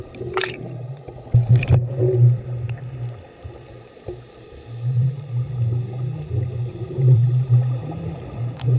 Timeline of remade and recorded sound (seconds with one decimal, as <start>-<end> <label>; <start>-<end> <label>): 0.0-5.7 remade; 5.7-6.7 recorded; 6.7-8.8 remade